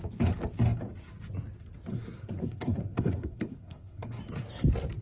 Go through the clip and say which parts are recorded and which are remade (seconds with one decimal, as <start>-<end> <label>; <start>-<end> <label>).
0.0-1.9 recorded; 1.9-4.2 remade; 4.2-5.0 recorded